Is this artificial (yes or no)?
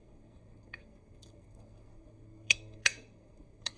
yes